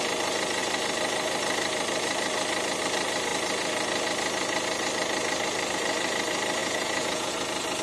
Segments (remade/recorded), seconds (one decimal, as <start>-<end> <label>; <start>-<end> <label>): 0.0-6.6 recorded; 6.6-7.3 remade; 7.3-7.8 recorded

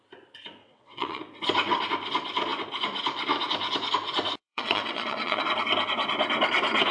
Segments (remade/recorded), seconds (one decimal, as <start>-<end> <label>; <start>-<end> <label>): 0.0-0.6 recorded; 0.6-1.2 remade; 1.2-4.4 recorded; 4.4-5.4 remade; 5.4-6.9 recorded

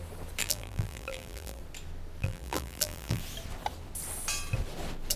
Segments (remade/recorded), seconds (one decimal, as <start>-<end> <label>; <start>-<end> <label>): 0.0-0.4 recorded; 0.4-1.6 remade; 1.6-2.2 recorded; 2.2-3.2 remade; 3.2-5.2 recorded

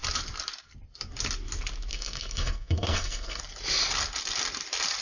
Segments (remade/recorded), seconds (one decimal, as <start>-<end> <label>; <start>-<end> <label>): 0.0-1.9 recorded; 1.9-3.4 remade; 3.4-5.0 recorded

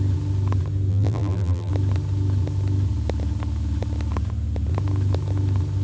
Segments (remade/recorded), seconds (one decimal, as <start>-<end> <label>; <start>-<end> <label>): 0.0-0.9 recorded; 0.9-1.7 remade; 1.7-5.8 recorded

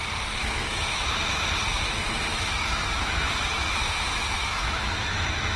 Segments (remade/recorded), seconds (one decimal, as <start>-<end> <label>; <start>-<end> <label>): 0.0-0.4 recorded; 0.4-1.0 remade; 1.0-2.3 recorded; 2.3-5.6 remade